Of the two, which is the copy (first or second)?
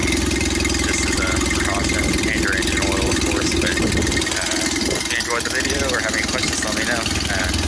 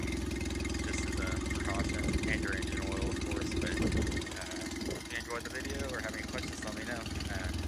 first